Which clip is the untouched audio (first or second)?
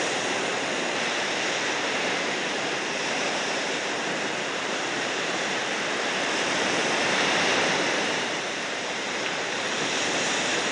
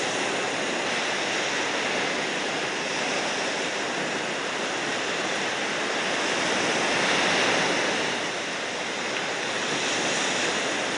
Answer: second